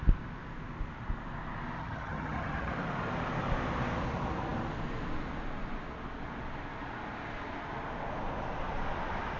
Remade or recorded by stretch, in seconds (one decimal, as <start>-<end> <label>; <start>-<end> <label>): 0.0-1.8 recorded; 1.8-2.7 remade; 2.7-9.4 recorded